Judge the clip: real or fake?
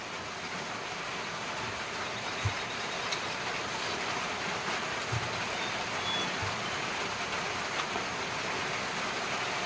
real